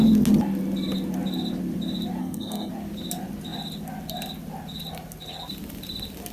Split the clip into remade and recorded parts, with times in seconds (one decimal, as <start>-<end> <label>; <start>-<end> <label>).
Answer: 0.0-2.2 recorded; 2.2-2.7 remade; 2.7-6.3 recorded